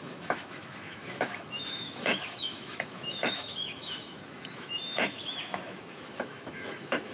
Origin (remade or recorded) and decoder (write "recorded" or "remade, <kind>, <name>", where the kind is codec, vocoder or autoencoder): remade, autoencoder, DAC-VAE